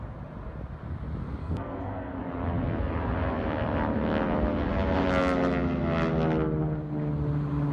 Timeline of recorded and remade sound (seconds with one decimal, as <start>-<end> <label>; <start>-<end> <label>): 0.0-1.4 recorded; 1.4-2.2 remade; 2.2-7.7 recorded